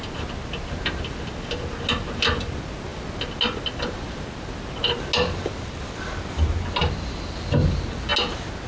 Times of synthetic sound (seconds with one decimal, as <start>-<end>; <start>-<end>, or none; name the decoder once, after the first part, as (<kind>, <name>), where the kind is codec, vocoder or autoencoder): none